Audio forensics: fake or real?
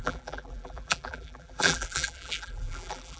fake